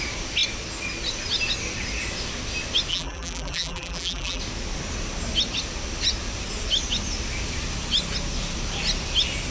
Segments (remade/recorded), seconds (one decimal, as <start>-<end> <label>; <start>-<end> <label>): 0.0-2.9 recorded; 2.9-4.4 remade; 4.4-9.5 recorded